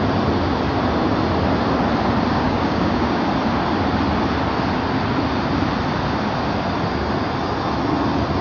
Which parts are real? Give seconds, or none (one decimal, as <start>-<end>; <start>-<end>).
0.0-2.3; 3.3-8.4